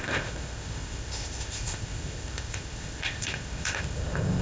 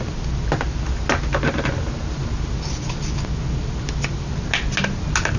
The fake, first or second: first